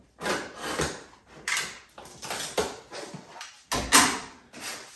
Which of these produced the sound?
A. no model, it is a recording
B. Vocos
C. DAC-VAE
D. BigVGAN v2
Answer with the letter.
A